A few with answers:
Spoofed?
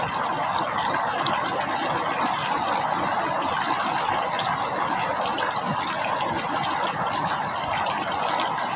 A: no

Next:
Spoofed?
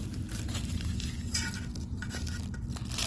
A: no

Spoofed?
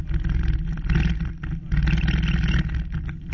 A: no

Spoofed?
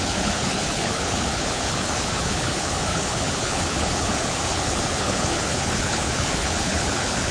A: yes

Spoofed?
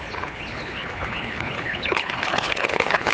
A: yes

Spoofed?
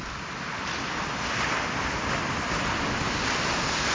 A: no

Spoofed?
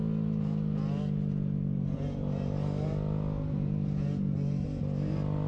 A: no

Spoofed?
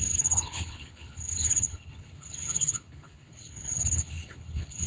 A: yes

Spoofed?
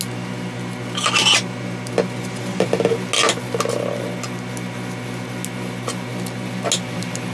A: no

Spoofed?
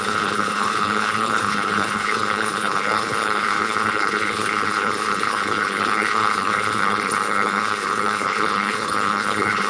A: yes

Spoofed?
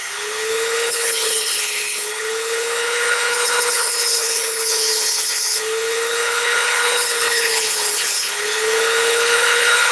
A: yes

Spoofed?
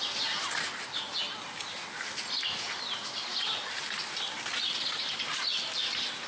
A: no